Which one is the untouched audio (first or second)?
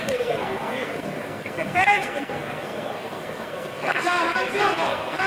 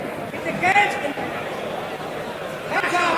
second